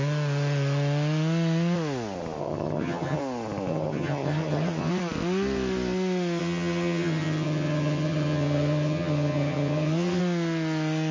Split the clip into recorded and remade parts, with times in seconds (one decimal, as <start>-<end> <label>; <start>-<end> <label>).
0.0-2.4 recorded; 2.4-3.2 remade; 3.2-3.7 recorded; 3.7-4.9 remade; 4.9-6.4 recorded; 6.4-10.2 remade; 10.2-11.1 recorded